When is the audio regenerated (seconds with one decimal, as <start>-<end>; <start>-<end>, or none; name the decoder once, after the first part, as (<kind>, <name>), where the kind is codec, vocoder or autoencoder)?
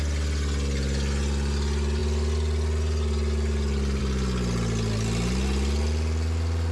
none